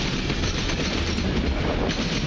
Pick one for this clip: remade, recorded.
recorded